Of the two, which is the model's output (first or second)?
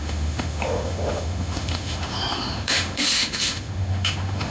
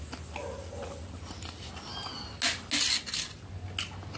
first